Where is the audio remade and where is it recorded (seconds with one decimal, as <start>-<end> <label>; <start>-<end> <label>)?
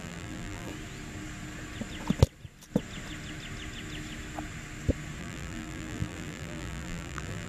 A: 0.0-0.7 remade; 0.7-5.2 recorded; 5.2-7.5 remade